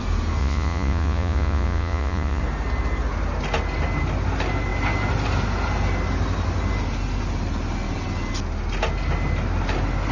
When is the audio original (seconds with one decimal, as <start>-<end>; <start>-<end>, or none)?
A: 0.0-0.4; 2.4-10.1

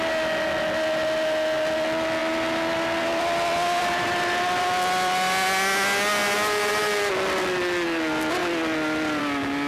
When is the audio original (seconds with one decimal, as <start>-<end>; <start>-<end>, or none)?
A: 0.0-2.2; 4.4-8.4; 9.2-9.7